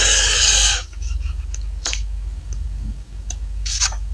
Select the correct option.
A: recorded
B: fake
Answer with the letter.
B